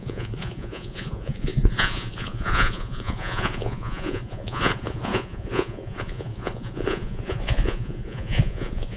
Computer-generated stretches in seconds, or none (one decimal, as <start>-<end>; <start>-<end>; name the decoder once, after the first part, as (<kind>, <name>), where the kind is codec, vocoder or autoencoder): 0.0-9.0 (vocoder, Vocos)